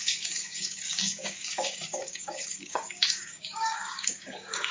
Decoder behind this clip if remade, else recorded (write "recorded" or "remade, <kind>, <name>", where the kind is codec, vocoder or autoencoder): remade, codec, DAC